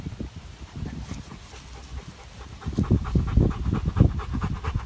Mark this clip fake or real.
real